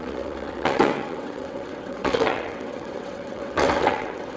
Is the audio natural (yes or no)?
no